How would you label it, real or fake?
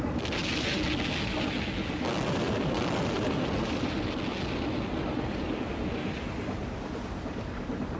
real